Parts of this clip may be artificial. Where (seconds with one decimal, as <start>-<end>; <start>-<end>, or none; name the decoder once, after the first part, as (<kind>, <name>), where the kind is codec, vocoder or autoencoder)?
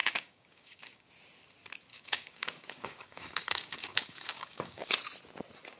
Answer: 0.0-1.1 (codec, DAC); 1.9-4.9